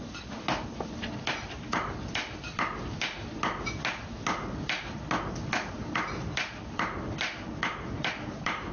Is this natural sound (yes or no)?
yes